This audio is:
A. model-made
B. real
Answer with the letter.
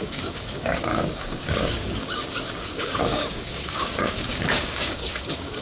A